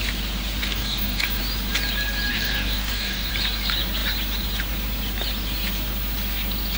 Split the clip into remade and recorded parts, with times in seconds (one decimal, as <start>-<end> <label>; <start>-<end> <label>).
0.0-0.6 recorded; 0.6-1.4 remade; 1.4-2.3 recorded; 2.3-3.3 remade; 3.3-6.8 recorded